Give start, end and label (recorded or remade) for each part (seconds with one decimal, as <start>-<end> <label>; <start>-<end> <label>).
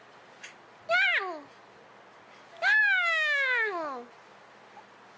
0.0-2.8 recorded; 2.8-4.1 remade; 4.1-5.2 recorded